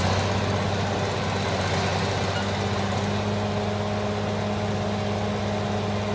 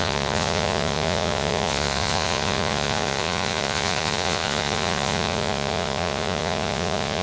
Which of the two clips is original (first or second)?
first